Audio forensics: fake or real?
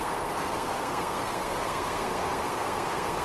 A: fake